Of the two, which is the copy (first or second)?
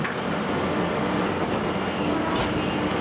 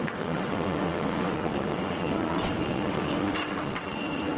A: second